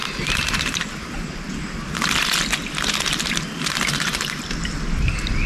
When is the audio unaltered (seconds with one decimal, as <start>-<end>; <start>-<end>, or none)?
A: 0.0-4.1; 5.1-5.5

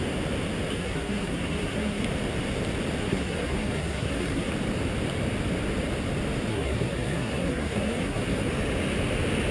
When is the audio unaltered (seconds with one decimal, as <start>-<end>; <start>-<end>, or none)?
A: 0.0-0.7; 2.0-3.0; 4.5-6.5; 8.5-9.5